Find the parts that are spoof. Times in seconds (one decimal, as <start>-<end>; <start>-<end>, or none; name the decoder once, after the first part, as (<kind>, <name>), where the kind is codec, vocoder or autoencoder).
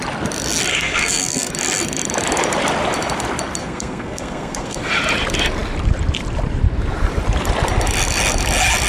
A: 0.7-1.5 (codec, SNAC); 3.6-4.9